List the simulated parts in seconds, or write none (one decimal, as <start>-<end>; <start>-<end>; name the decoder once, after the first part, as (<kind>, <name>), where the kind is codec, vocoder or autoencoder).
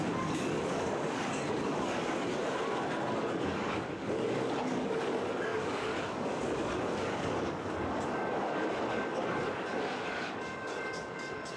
0.0-2.4 (codec, DAC); 3.3-11.6